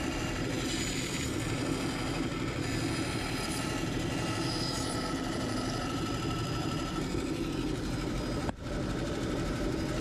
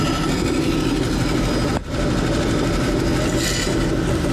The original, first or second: second